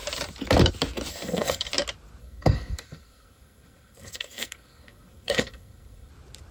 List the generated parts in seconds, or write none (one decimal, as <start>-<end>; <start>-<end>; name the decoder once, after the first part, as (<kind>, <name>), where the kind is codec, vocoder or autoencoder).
1.1-1.7 (codec, SNAC); 2.2-6.1